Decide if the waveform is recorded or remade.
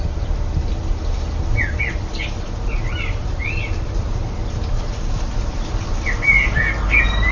recorded